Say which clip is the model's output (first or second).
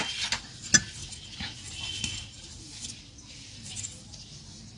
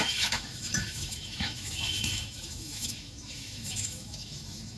second